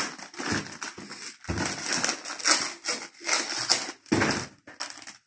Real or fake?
real